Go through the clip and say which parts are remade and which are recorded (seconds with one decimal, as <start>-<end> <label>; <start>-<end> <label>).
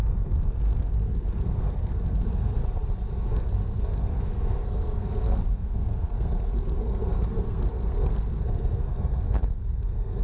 0.0-2.6 remade; 2.6-3.3 recorded; 3.3-10.2 remade